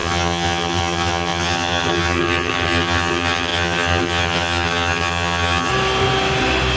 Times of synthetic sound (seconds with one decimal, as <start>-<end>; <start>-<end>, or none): 0.0-5.7